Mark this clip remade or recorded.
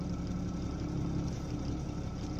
recorded